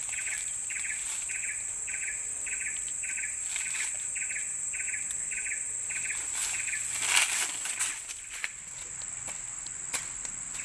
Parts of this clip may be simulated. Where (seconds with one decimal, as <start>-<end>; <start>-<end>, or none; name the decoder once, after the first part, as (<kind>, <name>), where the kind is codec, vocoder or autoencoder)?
0.0-4.1 (vocoder, BigVGAN v2); 6.4-7.7